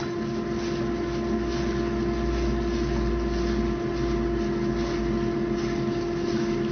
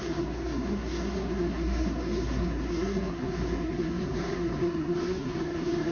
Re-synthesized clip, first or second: second